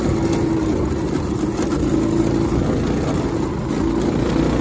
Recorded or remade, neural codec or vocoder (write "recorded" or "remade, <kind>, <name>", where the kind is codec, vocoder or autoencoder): recorded